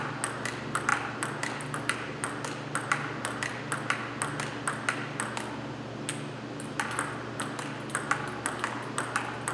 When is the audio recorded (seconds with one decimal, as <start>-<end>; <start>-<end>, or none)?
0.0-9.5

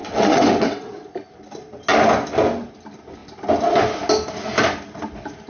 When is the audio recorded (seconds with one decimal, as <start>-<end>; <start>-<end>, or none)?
0.9-5.5

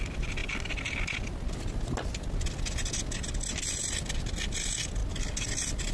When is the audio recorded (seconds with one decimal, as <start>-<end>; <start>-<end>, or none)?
0.0-5.9

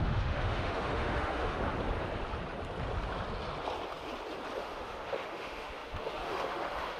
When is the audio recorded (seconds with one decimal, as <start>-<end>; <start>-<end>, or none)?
1.6-4.6

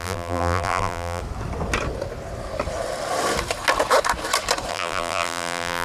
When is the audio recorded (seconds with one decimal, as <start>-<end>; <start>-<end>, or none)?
1.2-4.7